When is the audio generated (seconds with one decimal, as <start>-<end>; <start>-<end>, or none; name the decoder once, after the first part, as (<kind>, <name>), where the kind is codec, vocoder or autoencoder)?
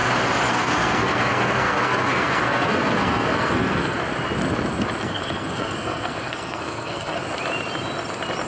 0.5-4.0 (codec, SNAC); 5.0-7.2